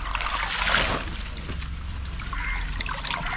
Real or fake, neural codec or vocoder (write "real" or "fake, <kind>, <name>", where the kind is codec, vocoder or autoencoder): real